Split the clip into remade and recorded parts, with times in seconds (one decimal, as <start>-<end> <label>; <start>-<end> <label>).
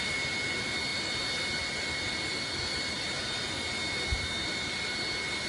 0.0-5.5 recorded